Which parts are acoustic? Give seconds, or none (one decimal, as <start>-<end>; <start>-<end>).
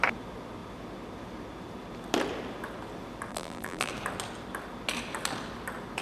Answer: 0.0-3.3; 3.9-6.0